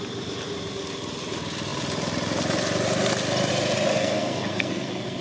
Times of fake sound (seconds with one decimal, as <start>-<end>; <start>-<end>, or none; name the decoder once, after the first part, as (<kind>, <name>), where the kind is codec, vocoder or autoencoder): 3.9-5.2 (codec, SNAC)